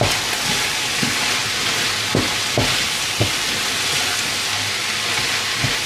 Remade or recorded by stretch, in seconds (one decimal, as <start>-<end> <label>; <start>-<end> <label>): 0.0-5.9 recorded